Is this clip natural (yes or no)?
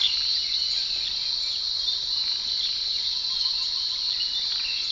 yes